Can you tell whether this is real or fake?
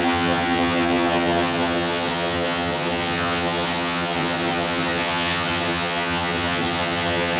fake